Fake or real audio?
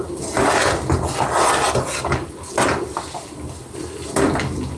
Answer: real